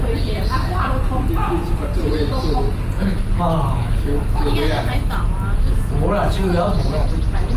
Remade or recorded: recorded